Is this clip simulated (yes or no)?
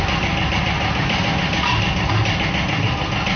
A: no